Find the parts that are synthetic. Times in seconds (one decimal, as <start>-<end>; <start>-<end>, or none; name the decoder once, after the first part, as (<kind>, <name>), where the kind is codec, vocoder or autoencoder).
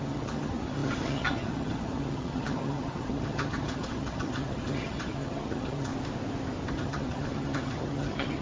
0.0-5.9 (vocoder, HiFi-GAN); 6.7-8.4